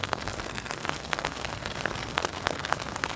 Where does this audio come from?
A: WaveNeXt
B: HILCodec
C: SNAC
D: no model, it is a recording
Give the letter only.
C